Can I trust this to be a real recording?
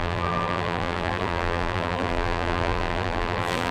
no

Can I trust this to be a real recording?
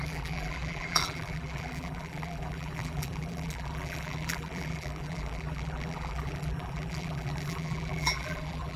no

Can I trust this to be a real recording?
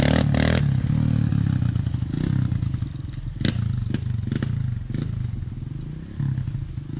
yes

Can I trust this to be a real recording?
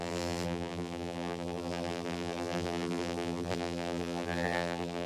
no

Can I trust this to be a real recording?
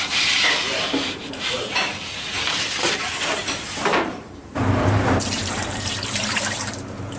no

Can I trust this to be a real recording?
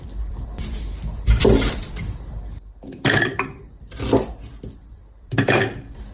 no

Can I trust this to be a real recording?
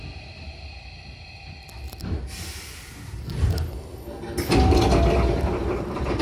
yes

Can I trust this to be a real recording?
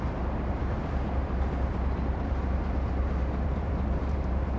no